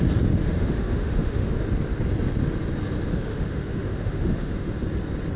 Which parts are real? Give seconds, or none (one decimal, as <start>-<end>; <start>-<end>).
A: 0.0-0.4; 1.6-3.1; 4.7-5.4